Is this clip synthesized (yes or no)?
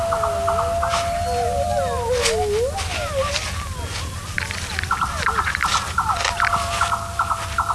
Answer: no